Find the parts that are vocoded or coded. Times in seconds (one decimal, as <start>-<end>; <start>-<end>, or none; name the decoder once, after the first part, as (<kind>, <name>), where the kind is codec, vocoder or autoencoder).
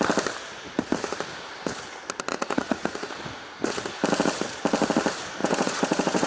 2.3-3.1 (vocoder, Vocos); 5.4-6.3